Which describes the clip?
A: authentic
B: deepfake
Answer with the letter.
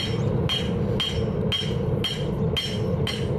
A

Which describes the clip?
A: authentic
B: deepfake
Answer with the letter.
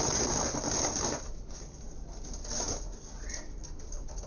A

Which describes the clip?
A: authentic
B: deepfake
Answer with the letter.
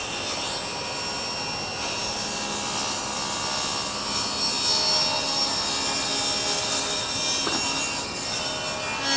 A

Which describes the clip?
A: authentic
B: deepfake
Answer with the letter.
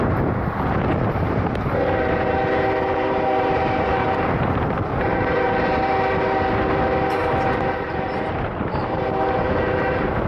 B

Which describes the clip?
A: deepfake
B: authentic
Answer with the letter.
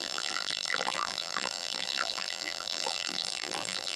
A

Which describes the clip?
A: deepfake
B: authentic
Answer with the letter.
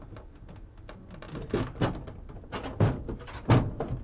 B